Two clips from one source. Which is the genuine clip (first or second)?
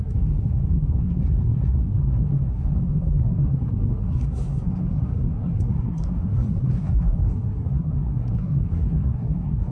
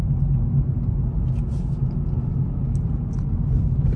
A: second